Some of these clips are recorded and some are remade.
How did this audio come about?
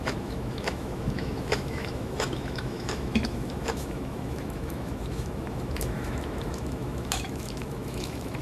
remade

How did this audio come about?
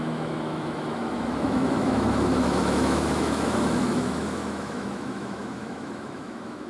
remade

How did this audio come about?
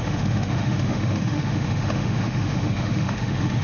remade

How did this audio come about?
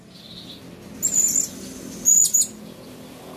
recorded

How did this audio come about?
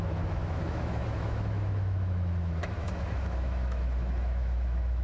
remade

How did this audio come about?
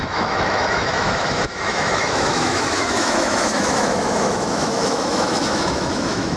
remade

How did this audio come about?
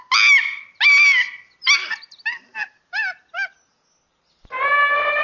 recorded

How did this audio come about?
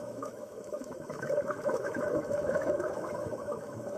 remade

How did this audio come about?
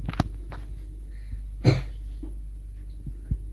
recorded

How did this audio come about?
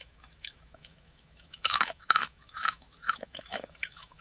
remade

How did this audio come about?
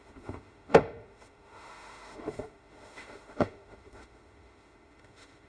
remade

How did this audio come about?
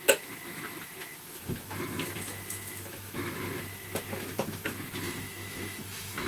remade